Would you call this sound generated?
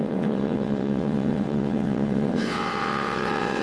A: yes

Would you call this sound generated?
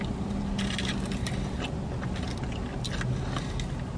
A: no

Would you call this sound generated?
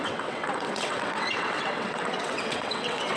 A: yes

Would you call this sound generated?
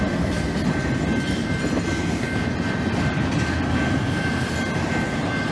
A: no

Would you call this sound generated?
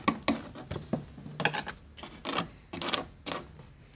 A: no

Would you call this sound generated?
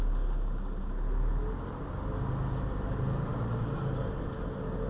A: no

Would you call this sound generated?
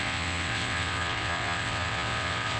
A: yes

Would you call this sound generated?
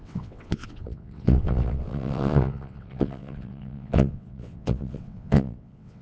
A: yes